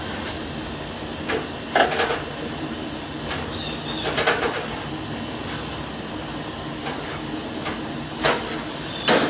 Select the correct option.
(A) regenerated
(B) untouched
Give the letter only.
B